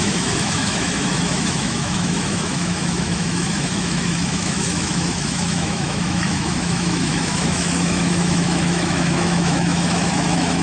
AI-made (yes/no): yes